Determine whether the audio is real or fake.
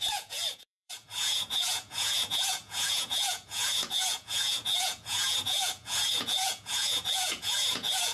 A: fake